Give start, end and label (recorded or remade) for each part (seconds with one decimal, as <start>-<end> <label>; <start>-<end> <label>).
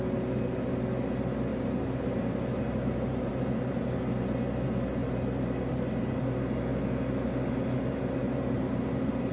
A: 0.0-1.5 recorded; 1.5-3.3 remade; 3.3-8.2 recorded; 8.2-9.3 remade